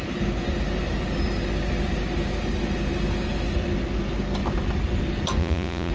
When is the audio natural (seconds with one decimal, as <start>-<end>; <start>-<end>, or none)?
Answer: 0.0-5.4